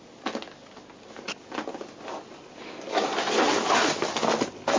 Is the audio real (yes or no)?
yes